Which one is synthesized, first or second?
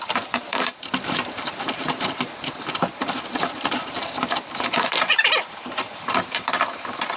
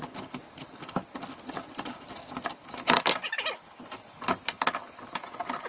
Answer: first